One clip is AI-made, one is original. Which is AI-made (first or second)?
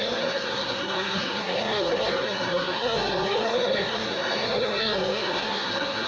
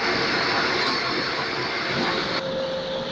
first